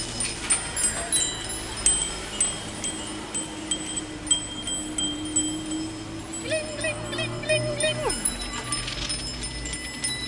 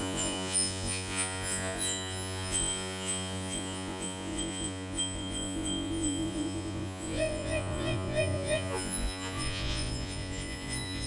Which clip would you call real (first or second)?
first